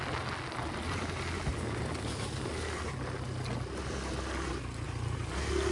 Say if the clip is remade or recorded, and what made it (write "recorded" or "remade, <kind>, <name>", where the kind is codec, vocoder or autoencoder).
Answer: recorded